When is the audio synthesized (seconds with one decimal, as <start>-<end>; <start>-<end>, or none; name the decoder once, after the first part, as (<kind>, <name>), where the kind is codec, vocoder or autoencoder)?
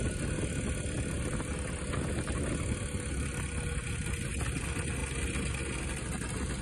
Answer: none